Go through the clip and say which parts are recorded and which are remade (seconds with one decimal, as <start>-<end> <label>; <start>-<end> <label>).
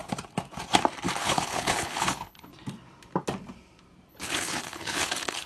0.0-1.2 recorded; 1.2-2.5 remade; 2.5-4.1 recorded; 4.1-5.5 remade